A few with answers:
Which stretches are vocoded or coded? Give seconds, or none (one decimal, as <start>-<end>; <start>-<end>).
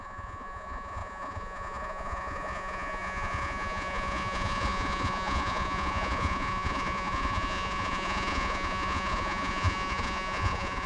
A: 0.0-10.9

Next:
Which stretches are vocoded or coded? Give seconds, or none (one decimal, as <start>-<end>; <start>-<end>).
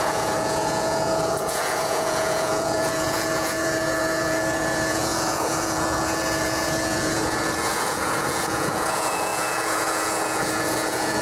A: 0.0-11.2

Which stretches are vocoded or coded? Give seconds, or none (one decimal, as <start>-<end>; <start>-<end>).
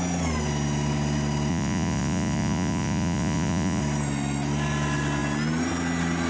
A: 1.5-3.8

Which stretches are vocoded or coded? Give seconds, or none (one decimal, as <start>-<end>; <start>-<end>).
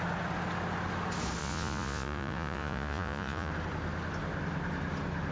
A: 1.4-3.5